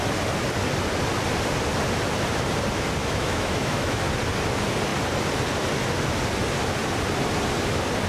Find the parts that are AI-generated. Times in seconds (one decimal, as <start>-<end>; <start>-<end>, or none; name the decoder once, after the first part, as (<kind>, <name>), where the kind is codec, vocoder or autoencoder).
3.0-4.0 (autoencoder, DAC-VAE)